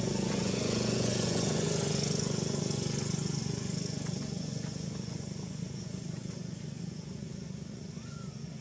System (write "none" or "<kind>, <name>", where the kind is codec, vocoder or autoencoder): vocoder, Vocos